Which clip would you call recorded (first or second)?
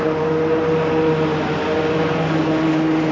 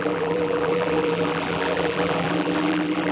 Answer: first